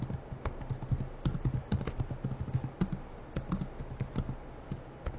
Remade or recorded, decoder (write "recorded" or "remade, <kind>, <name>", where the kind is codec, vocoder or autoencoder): recorded